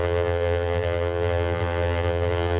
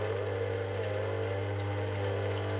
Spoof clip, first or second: first